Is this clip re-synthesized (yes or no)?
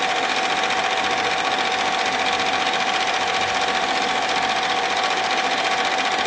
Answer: no